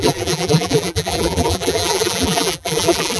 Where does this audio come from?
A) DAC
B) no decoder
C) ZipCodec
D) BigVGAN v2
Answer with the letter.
D